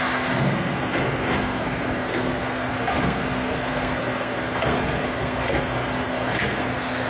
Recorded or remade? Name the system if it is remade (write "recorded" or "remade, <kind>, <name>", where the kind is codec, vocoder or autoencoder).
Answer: remade, codec, SNAC